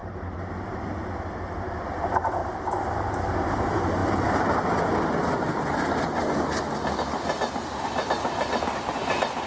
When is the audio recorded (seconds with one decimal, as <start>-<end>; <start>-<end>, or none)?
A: 0.8-9.5